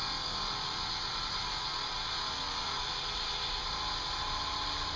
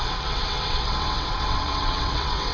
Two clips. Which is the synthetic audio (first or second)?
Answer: second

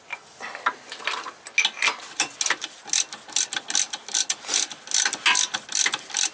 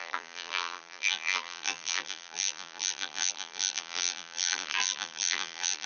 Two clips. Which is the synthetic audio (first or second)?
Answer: second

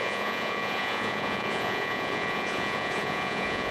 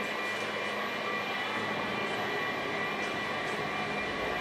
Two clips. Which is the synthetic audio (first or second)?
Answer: first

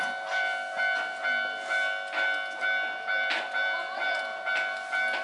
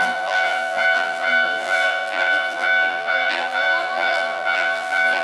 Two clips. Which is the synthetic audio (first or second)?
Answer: second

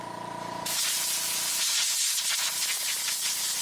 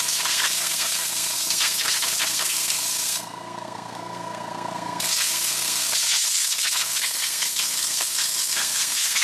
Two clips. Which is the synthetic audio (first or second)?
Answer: second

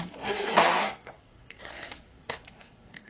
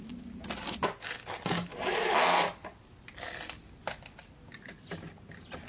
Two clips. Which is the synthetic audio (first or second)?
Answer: first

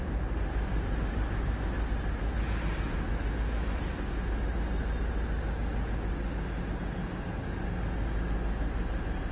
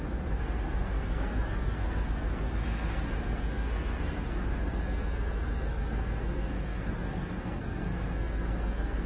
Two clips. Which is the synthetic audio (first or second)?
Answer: second